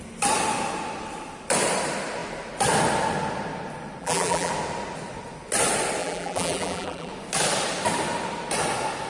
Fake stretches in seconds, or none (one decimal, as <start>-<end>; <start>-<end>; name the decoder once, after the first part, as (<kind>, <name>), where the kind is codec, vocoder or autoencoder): 4.0-4.5 (vocoder, BigVGAN v2); 6.0-7.1